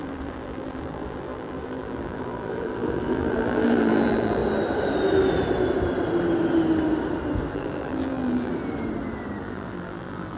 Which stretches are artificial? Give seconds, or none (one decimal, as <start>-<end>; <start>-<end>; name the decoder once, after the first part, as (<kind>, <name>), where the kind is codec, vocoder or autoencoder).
0.0-4.4 (vocoder, BigVGAN v2); 7.5-8.5; 9.4-10.4